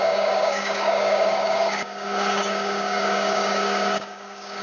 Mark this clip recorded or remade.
remade